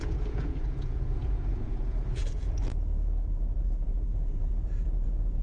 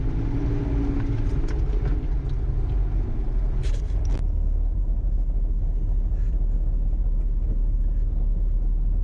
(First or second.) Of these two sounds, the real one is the second